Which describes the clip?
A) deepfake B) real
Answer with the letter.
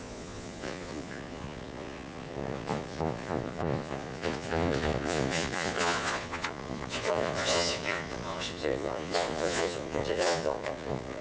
A